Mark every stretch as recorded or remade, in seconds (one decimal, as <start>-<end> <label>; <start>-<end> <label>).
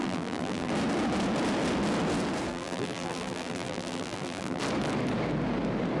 0.0-0.7 remade; 0.7-2.5 recorded; 2.5-4.6 remade; 4.6-6.0 recorded